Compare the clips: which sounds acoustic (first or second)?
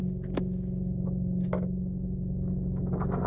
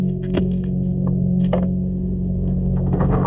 first